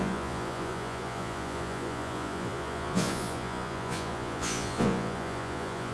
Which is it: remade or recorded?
remade